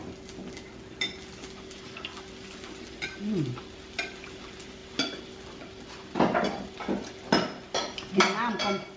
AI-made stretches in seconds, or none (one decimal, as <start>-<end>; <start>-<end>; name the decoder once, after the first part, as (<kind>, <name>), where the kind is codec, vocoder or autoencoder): none